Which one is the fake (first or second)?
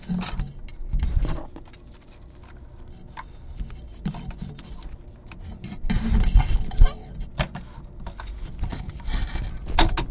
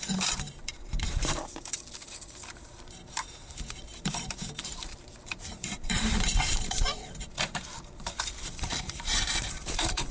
second